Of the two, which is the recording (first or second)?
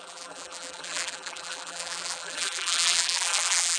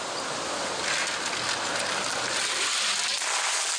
second